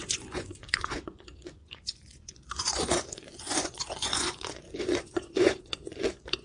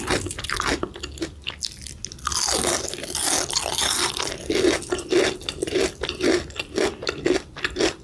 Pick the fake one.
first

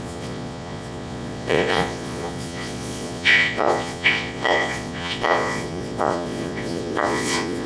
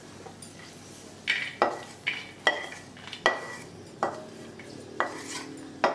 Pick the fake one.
first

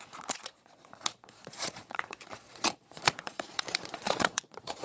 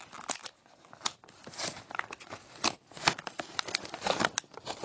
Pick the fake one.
first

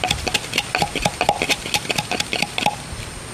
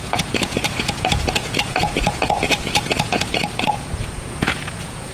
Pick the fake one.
second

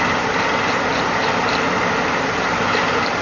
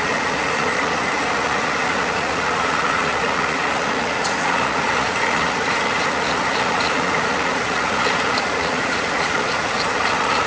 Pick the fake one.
second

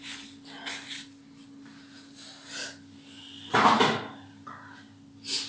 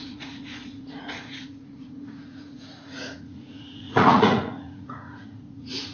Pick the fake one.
second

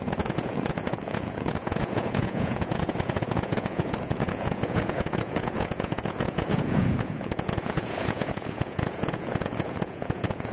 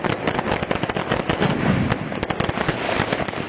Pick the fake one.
first